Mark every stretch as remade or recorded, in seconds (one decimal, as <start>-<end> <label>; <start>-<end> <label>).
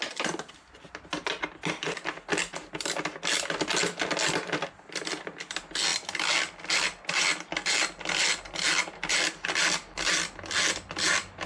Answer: 0.0-11.5 recorded